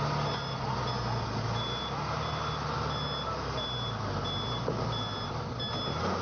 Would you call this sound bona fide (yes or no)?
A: yes